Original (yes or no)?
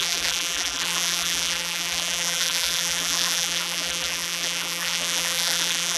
no